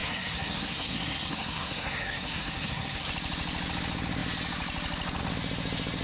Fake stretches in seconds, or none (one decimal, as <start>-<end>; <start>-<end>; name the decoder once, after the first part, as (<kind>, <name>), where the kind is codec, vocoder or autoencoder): 0.0-3.1 (codec, SNAC)

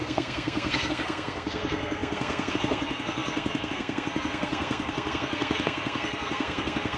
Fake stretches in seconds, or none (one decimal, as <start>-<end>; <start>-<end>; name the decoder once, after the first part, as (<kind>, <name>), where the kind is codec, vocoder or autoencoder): 0.0-7.0 (codec, SNAC)

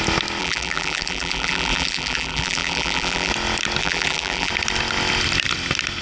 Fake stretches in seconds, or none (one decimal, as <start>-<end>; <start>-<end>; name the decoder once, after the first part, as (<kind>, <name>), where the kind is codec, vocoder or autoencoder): 0.4-3.3 (vocoder, BigVGAN v2); 3.8-4.5

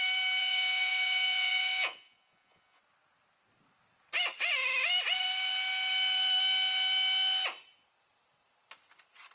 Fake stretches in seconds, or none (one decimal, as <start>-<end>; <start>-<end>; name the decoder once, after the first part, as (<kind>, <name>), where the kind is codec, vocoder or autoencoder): 0.4-2.8 (vocoder, Vocos)

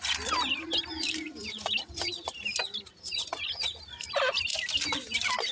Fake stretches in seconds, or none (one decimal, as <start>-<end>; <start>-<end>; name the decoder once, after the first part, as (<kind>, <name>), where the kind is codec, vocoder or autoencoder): 0.0-4.5 (vocoder, BigVGAN v2)

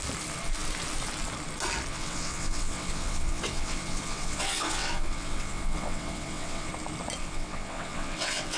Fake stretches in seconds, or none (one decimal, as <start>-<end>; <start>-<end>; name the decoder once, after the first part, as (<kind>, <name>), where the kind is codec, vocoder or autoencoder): 1.9-6.7 (vocoder, WaveNeXt); 7.2-8.6